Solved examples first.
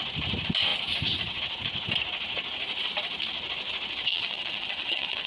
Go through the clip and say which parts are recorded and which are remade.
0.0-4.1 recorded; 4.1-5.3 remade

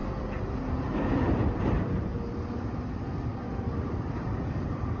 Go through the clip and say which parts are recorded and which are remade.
0.0-0.6 recorded; 0.6-2.1 remade; 2.1-2.8 recorded; 2.8-5.0 remade

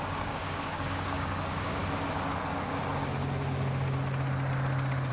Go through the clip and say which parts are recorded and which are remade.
0.0-1.8 remade; 1.8-5.1 recorded

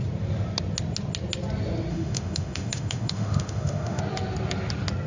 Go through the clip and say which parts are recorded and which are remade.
0.0-1.9 recorded; 1.9-4.0 remade; 4.0-5.1 recorded